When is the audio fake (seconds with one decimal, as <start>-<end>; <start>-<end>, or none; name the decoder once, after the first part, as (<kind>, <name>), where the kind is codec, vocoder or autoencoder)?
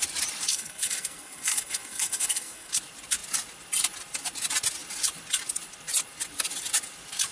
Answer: 0.5-2.7 (codec, SNAC)